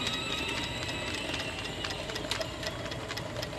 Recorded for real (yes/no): yes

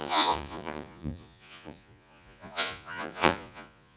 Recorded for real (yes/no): no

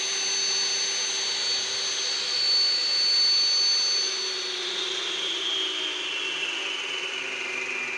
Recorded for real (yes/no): yes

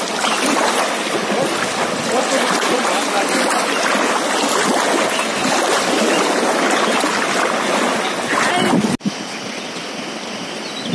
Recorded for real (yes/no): yes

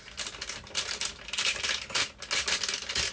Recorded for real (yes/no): yes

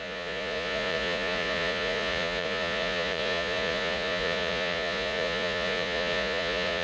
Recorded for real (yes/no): no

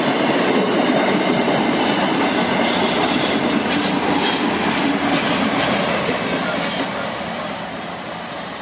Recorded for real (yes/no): yes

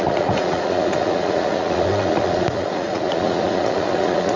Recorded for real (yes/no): no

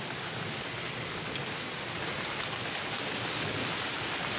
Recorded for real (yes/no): yes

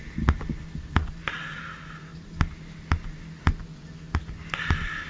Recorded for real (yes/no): yes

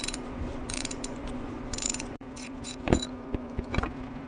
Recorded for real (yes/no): no